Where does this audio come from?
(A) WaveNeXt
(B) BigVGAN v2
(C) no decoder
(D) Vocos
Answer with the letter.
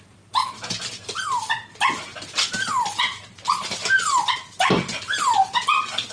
C